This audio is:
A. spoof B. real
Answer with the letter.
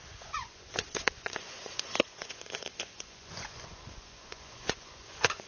A